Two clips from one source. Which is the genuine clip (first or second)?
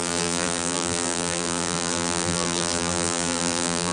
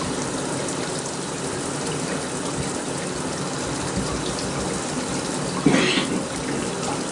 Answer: second